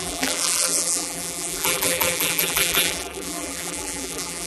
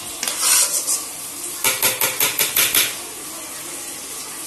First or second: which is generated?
first